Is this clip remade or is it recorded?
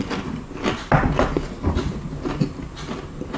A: recorded